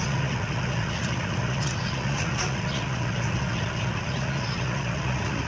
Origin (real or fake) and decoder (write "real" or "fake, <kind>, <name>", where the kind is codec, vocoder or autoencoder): fake, vocoder, Vocos